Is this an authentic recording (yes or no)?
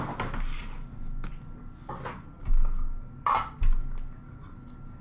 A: yes